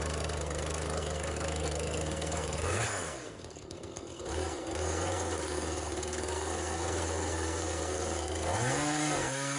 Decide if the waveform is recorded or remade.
remade